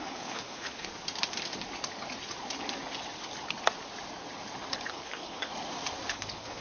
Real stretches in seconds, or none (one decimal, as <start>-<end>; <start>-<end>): 0.9-4.9; 5.5-6.1